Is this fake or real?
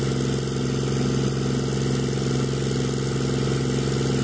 real